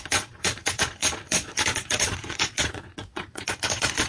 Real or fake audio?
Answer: fake